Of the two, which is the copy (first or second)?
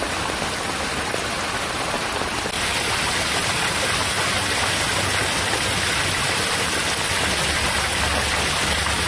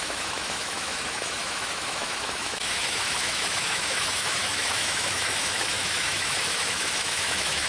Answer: second